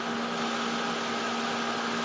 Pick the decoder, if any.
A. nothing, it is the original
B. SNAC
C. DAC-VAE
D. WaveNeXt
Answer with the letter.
A